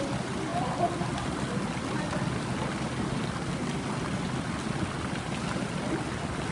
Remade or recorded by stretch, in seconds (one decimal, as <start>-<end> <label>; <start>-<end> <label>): 0.0-6.5 recorded